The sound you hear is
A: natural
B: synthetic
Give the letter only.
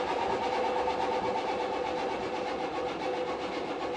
A